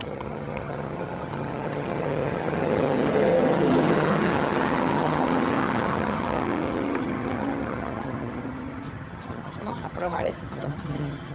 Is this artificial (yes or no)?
yes